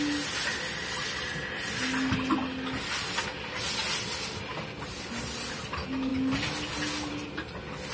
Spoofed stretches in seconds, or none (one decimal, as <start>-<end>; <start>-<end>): none